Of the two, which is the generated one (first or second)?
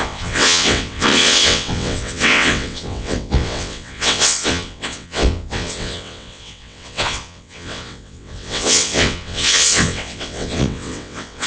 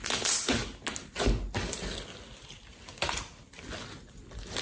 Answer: first